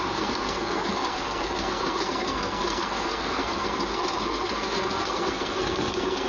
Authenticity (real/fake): fake